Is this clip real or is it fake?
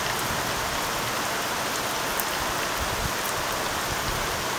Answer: real